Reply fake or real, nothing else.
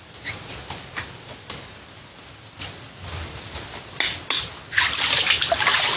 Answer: real